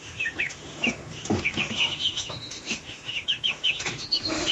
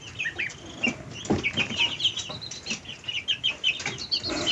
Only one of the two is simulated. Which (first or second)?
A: first